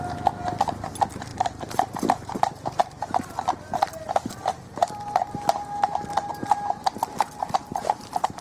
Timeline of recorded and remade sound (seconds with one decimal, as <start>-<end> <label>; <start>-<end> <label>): 0.0-1.3 recorded; 1.3-2.0 remade; 2.0-7.8 recorded; 7.8-8.4 remade